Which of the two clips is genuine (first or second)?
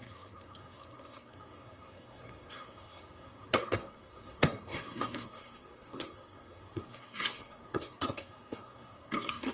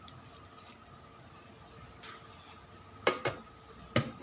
second